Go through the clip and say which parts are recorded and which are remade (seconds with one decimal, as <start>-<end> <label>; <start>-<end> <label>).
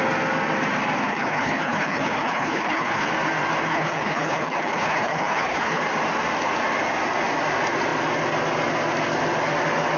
0.0-1.0 recorded; 1.0-3.1 remade; 3.1-3.7 recorded; 3.7-5.8 remade; 5.8-10.0 recorded